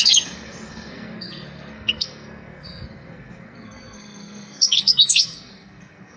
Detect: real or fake fake